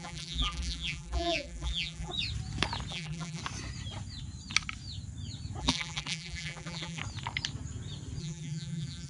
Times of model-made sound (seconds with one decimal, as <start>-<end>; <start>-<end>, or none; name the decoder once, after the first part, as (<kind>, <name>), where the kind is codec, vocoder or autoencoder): 0.0-2.1 (vocoder, BigVGAN v2); 2.9-3.4; 5.6-7.0; 8.2-9.1